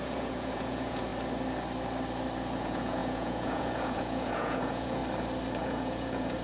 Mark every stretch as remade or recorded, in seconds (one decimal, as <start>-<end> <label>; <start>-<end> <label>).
0.0-1.1 remade; 1.1-2.6 recorded; 2.6-5.0 remade; 5.0-5.6 recorded; 5.6-6.4 remade